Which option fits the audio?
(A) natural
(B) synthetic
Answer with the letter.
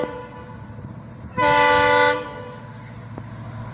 A